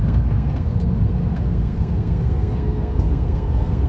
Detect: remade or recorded remade